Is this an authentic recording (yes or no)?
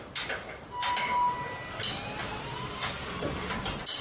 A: yes